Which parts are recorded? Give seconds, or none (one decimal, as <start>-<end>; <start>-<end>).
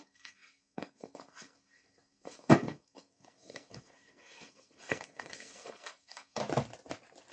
6.4-7.3